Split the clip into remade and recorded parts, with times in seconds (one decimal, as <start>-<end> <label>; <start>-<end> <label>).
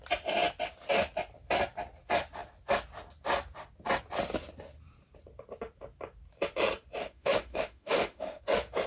0.0-7.0 recorded; 7.0-8.4 remade; 8.4-8.9 recorded